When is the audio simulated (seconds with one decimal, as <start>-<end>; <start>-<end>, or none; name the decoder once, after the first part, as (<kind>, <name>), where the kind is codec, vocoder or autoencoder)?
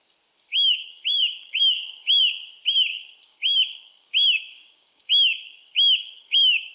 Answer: 0.5-2.2 (codec, DAC); 2.9-4.1; 4.5-6.7